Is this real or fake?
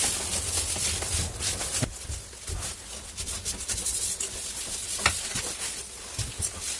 real